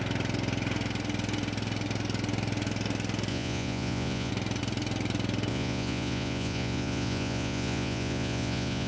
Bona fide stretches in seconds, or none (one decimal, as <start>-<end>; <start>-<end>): 0.0-3.3; 4.3-5.5